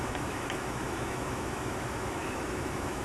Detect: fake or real fake